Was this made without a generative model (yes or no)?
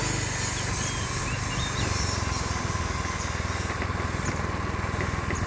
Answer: yes